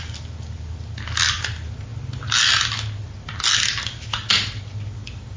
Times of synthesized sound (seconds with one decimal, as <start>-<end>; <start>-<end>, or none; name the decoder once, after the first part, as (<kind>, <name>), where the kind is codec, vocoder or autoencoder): none